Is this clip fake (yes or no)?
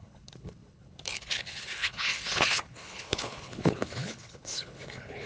yes